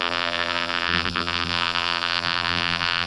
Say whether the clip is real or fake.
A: fake